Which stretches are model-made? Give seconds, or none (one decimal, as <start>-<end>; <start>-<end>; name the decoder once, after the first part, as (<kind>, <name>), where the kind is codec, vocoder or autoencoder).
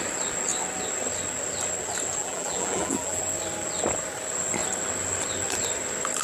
2.2-3.2 (vocoder, BigVGAN v2)